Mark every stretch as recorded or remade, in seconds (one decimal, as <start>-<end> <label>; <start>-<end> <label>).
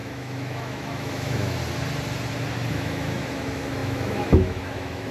0.0-1.6 remade; 1.6-2.7 recorded; 2.7-5.1 remade